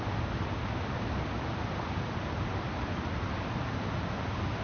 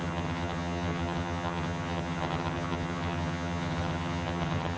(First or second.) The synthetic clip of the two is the second